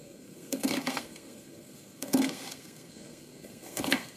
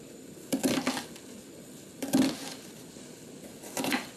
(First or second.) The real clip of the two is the second